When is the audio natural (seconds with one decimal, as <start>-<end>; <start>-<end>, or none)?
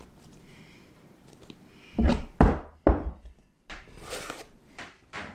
0.0-2.0